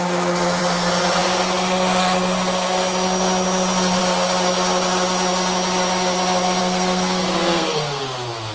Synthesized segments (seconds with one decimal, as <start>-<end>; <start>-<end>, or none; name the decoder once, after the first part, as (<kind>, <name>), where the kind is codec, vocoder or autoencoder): 6.6-8.0 (codec, SNAC)